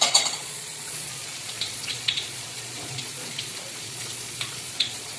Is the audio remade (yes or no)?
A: yes